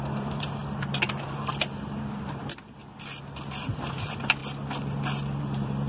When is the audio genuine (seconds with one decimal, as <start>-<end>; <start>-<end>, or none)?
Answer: 2.8-3.6; 4.4-5.4